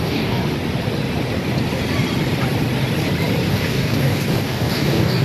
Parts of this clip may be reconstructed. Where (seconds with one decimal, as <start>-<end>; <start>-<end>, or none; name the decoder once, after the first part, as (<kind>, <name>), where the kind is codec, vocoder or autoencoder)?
0.0-0.4 (codec, DAC); 3.5-5.2